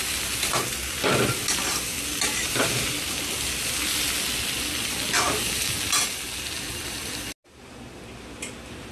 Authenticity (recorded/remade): recorded